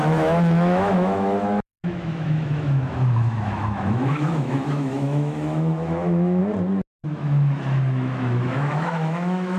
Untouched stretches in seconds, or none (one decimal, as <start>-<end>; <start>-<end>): 6.4-7.0